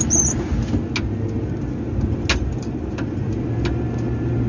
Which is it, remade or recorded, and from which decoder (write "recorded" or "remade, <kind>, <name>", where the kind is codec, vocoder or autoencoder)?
recorded